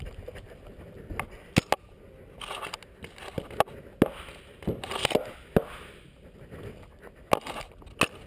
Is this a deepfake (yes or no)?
no